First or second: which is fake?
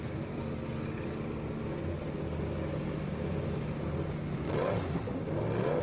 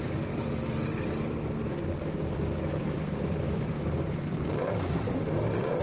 second